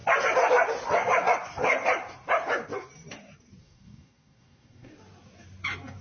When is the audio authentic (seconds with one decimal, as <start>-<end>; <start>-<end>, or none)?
0.0-3.6; 4.9-6.0